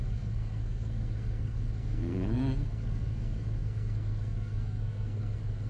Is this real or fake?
fake